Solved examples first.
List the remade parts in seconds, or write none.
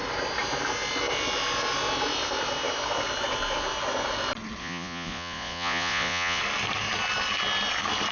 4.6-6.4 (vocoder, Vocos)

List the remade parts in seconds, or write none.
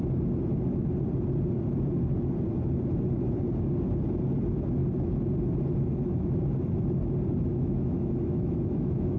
7.5-9.2 (autoencoder, DAC-VAE)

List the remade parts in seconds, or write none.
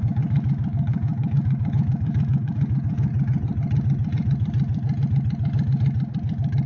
0.0-3.1 (codec, DAC)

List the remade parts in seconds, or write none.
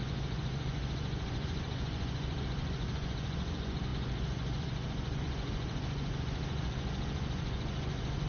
0.0-8.3 (vocoder, Vocos)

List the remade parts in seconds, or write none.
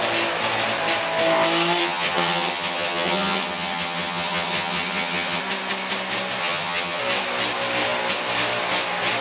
1.8-5.4 (vocoder, HiFi-GAN); 6.4-7.0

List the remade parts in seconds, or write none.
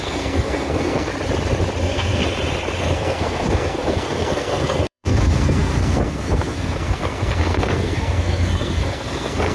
0.0-1.1 (codec, SNAC); 1.8-2.2; 2.8-9.5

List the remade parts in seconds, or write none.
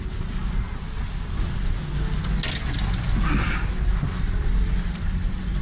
none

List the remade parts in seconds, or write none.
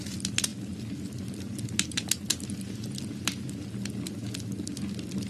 none